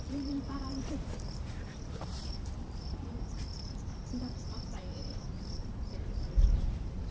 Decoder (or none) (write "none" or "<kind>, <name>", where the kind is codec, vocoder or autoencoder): vocoder, BigVGAN v2